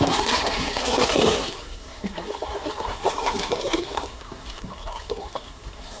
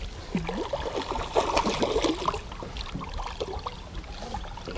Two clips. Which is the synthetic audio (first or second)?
first